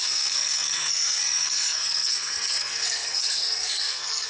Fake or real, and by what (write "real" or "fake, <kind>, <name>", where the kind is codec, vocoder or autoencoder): fake, codec, SNAC